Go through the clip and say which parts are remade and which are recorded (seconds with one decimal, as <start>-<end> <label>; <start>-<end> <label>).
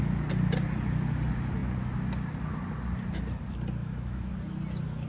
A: 0.0-3.8 recorded; 3.8-4.3 remade; 4.3-5.1 recorded